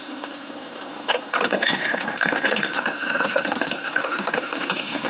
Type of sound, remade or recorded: remade